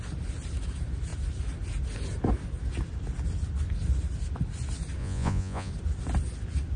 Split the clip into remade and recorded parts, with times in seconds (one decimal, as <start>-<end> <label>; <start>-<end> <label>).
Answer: 0.0-5.0 recorded; 5.0-5.7 remade; 5.7-6.8 recorded

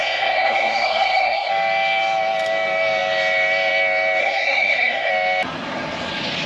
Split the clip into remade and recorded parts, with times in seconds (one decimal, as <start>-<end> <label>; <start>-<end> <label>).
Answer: 0.0-1.5 remade; 1.5-4.2 recorded; 4.2-5.1 remade; 5.1-6.5 recorded

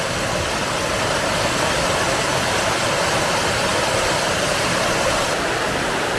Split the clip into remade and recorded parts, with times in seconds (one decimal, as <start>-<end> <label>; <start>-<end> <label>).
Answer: 0.0-6.2 recorded

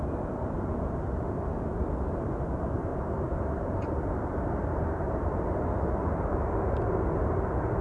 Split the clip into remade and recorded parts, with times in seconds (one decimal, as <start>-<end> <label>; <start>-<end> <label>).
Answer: 0.0-2.9 recorded; 2.9-6.1 remade; 6.1-7.8 recorded